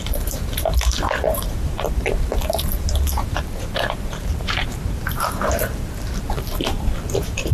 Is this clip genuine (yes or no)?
no